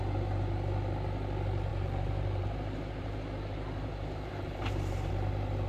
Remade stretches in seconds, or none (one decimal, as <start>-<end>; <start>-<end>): 1.7-5.1